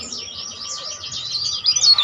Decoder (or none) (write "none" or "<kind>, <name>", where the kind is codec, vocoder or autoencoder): none